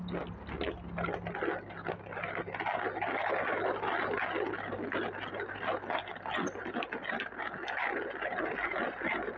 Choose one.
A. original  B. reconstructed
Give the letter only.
A